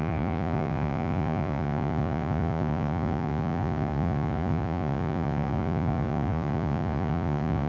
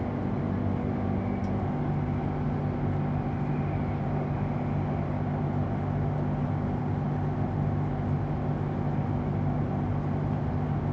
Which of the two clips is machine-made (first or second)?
first